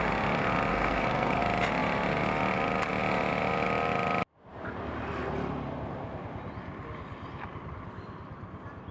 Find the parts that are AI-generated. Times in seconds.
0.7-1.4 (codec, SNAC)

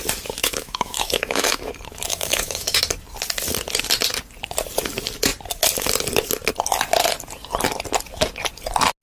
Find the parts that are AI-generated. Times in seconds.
0.4-1.7 (autoencoder, DAC-VAE); 2.1-2.8

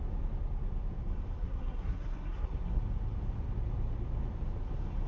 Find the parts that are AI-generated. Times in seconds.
1.4-2.8 (codec, SNAC)

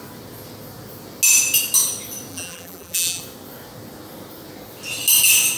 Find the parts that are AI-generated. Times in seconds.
2.3-3.2 (vocoder, BigVGAN v2)

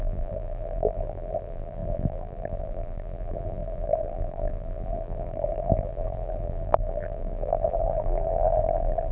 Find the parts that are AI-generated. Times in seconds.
0.0-9.1 (vocoder, BigVGAN v2)

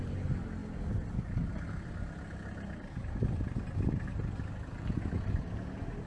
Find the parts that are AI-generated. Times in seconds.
none

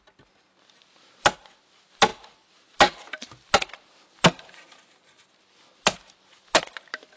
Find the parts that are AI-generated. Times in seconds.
none

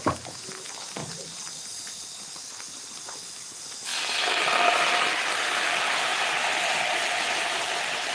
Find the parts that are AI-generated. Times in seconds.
none